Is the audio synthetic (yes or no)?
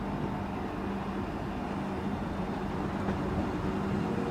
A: no